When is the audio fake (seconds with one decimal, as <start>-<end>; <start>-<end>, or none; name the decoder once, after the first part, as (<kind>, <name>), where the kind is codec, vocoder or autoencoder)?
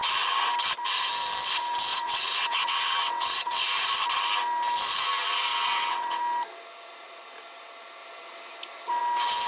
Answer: 1.9-3.6 (vocoder, WaveNeXt); 5.5-6.2